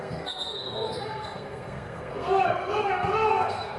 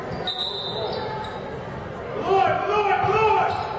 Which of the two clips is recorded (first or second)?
second